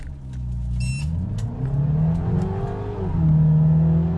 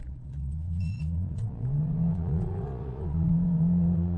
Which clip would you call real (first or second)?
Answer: first